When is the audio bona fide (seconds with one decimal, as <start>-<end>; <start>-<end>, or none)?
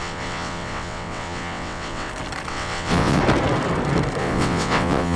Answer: 2.1-2.5; 3.2-4.2